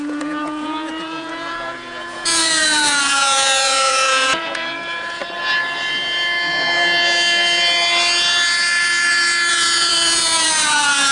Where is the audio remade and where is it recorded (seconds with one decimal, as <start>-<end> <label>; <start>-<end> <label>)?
0.0-5.2 remade; 5.2-9.5 recorded; 9.5-11.1 remade